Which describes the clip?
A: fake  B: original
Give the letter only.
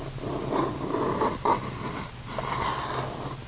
B